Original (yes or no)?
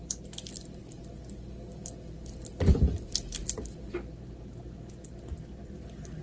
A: yes